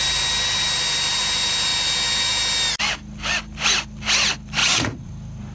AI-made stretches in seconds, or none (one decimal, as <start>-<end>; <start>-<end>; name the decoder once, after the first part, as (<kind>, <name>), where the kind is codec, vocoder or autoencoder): 4.6-5.1 (vocoder, Vocos)